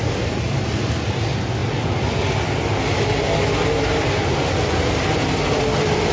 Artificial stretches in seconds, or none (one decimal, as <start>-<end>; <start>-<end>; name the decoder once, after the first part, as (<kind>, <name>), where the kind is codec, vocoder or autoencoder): none